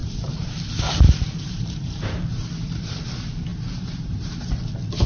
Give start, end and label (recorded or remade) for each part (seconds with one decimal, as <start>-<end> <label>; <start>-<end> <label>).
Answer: 0.0-3.1 remade; 3.1-3.5 recorded; 3.5-4.6 remade; 4.6-5.1 recorded